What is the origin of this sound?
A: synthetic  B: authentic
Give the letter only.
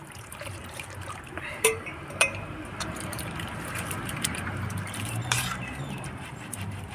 A